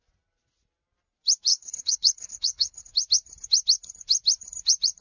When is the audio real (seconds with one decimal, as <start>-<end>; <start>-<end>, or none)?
0.0-1.5; 2.9-5.0